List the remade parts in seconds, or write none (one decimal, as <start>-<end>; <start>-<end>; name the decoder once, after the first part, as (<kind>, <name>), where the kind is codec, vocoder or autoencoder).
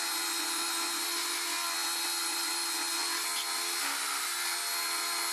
none